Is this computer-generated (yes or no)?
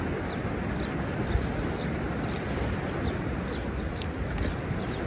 no